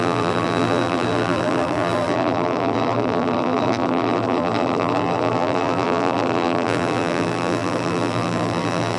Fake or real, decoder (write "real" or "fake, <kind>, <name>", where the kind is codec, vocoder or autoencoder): fake, vocoder, BigVGAN v2